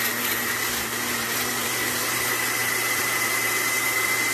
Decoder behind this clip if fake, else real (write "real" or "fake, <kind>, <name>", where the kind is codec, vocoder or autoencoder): real